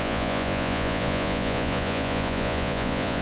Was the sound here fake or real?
fake